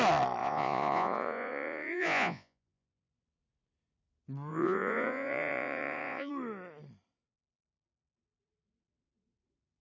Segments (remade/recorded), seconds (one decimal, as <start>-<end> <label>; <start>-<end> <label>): 0.0-0.4 recorded; 0.4-3.1 remade; 3.1-4.5 recorded; 4.5-6.3 remade; 6.3-9.8 recorded